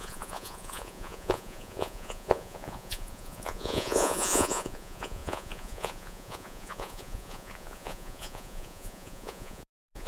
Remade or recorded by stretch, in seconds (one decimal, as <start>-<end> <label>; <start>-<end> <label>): 0.0-10.1 remade